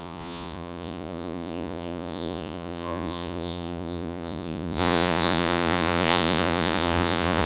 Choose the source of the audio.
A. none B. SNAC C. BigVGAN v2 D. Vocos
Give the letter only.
D